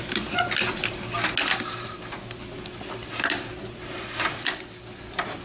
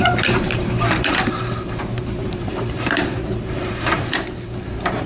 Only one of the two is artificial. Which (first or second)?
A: second